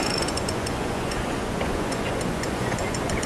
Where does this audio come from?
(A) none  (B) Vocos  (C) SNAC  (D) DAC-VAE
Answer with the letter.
B